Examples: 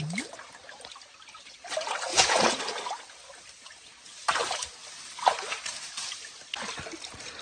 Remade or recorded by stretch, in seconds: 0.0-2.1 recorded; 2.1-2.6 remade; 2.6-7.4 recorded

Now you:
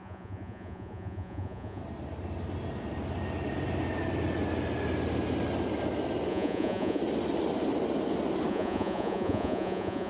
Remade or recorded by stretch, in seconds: 0.0-1.8 remade; 1.8-6.3 recorded; 6.3-7.0 remade; 7.0-8.5 recorded; 8.5-10.1 remade

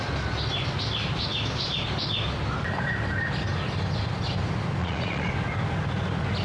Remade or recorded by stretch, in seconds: 0.0-4.8 recorded; 4.8-5.3 remade; 5.3-6.4 recorded

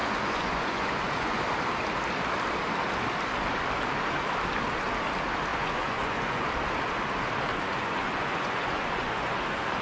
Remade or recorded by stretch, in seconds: 0.0-1.4 remade; 1.4-5.5 recorded; 5.5-6.5 remade; 6.5-7.5 recorded; 7.5-9.8 remade

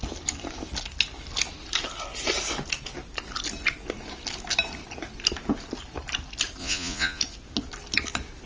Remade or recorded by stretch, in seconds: 0.0-6.6 recorded; 6.6-7.2 remade; 7.2-8.5 recorded

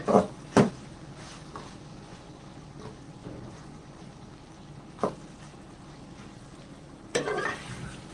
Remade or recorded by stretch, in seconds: 0.0-1.9 recorded; 1.9-2.4 remade; 2.4-3.2 recorded; 3.2-4.3 remade; 4.3-8.1 recorded

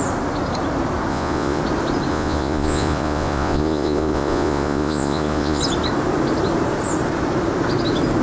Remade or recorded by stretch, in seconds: 0.0-1.1 recorded; 1.1-1.6 remade; 1.6-2.1 recorded; 2.1-5.6 remade; 5.6-8.2 recorded